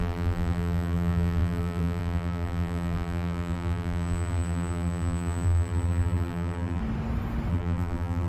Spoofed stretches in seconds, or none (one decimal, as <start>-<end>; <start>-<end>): 0.0-6.8; 7.5-8.3